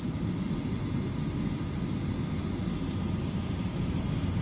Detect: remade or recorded recorded